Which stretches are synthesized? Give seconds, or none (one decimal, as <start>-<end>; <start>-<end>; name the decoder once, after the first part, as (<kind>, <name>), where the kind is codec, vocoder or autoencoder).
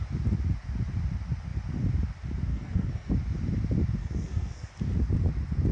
2.5-3.1 (codec, SNAC); 4.0-4.7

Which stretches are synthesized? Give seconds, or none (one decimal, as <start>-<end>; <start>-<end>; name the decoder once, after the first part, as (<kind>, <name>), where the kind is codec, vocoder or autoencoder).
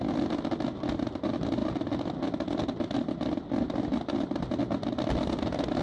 1.6-4.5 (vocoder, BigVGAN v2)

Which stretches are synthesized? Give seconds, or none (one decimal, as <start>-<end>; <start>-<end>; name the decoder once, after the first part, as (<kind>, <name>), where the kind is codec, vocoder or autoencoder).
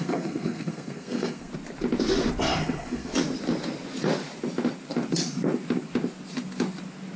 0.0-1.5 (codec, SNAC); 2.6-3.1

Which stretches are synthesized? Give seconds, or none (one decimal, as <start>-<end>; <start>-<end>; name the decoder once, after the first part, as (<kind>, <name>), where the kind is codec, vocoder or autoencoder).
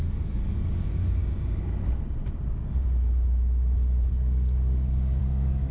0.0-1.2 (codec, DAC); 4.1-5.7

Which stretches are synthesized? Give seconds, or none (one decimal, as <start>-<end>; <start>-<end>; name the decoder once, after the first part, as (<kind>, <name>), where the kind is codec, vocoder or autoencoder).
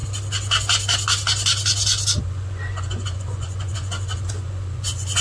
2.2-5.2 (vocoder, Vocos)